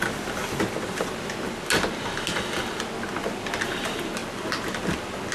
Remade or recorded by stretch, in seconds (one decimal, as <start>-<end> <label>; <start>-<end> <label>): 0.0-5.3 recorded